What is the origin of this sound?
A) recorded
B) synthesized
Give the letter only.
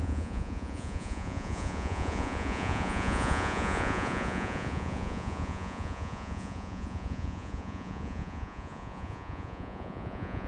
B